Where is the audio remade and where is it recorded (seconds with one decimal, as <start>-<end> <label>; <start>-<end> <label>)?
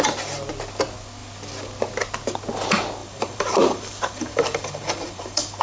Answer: 0.0-3.0 recorded; 3.0-5.6 remade